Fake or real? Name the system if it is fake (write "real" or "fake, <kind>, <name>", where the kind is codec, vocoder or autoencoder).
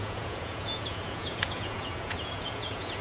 fake, vocoder, Vocos